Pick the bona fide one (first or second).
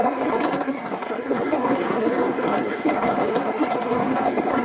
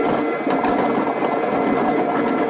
second